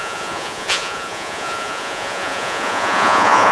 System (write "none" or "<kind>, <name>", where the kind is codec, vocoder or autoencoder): vocoder, Vocos